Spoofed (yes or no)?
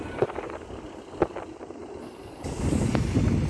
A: no